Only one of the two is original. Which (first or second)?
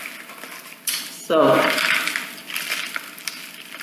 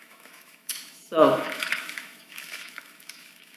first